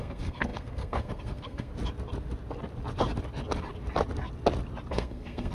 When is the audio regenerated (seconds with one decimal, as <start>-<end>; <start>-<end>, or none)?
0.0-1.7; 4.9-5.5